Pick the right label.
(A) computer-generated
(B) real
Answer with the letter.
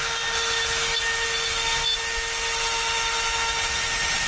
B